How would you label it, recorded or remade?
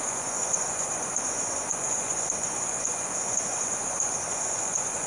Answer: remade